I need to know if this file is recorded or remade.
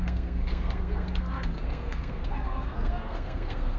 remade